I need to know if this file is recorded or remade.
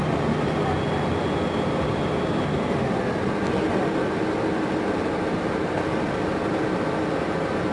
recorded